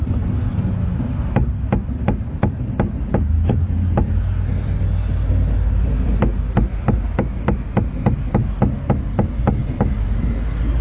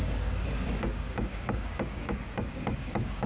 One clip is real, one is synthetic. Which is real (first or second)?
first